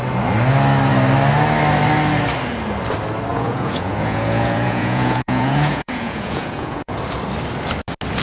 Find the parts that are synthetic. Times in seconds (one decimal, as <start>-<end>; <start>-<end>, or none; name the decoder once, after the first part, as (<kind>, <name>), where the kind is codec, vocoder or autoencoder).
3.3-7.0 (vocoder, Vocos)

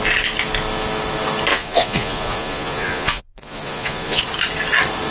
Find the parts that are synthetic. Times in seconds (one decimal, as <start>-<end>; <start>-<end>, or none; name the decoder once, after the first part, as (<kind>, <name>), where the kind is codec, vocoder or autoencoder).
1.5-4.2 (vocoder, Vocos)

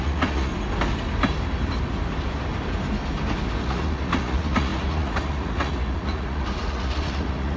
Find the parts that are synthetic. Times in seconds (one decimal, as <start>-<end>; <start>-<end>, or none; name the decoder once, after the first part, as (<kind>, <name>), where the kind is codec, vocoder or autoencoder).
0.0-0.5 (vocoder, Vocos); 3.6-7.6

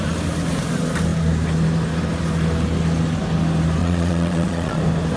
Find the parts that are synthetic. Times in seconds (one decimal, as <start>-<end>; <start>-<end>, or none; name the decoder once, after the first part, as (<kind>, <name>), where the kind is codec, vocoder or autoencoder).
3.8-4.8 (vocoder, Vocos)

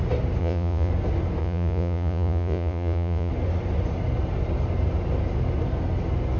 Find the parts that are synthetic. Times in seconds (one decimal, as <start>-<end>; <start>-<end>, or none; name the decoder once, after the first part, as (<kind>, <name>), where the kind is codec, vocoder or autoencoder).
0.4-0.9 (vocoder, Vocos); 1.4-3.3

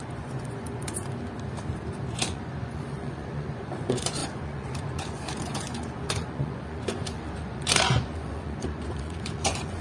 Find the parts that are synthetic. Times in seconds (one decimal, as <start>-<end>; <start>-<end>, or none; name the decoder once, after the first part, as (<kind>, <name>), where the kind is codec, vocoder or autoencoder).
0.0-1.0 (vocoder, Vocos); 2.1-9.8

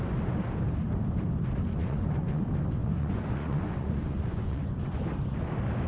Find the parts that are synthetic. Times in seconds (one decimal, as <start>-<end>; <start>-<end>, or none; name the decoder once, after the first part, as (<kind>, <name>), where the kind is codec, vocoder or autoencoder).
1.8-2.4 (vocoder, Vocos); 2.8-5.0